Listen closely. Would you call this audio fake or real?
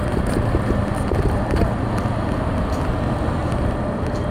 real